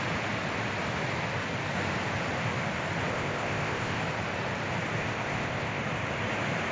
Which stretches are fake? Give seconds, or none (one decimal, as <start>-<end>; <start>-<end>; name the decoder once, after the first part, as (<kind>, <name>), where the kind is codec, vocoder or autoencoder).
3.1-4.0 (codec, ZipCodec); 5.0-5.8